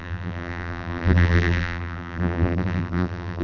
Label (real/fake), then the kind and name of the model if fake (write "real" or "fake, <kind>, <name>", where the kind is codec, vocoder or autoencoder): fake, vocoder, BigVGAN v2